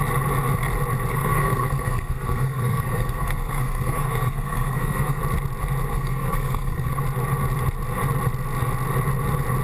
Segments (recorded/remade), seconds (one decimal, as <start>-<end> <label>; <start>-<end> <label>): 0.0-1.1 recorded; 1.1-5.2 remade; 5.2-5.9 recorded; 5.9-7.0 remade; 7.0-9.6 recorded